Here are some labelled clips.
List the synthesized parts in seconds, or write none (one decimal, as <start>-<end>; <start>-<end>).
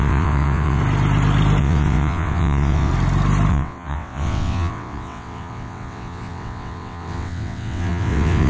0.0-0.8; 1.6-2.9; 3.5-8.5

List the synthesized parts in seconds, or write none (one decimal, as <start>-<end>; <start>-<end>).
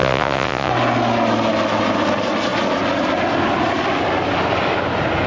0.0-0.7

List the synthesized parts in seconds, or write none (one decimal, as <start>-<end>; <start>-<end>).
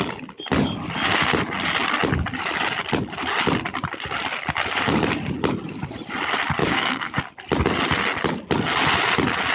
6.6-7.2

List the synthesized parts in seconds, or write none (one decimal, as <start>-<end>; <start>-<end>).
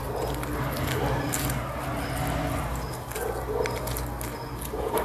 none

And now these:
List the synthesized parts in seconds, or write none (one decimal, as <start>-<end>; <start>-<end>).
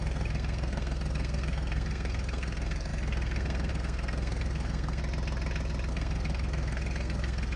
0.0-5.0; 5.9-7.6